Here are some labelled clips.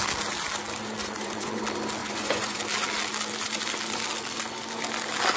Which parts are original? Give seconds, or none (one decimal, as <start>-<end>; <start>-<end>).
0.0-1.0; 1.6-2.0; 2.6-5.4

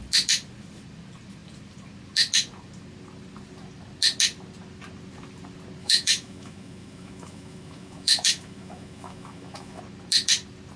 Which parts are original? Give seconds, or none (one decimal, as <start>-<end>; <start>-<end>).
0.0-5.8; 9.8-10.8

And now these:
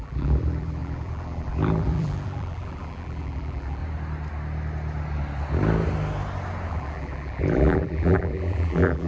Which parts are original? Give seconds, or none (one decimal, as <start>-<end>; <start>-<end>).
3.8-6.7